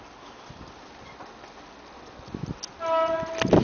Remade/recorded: recorded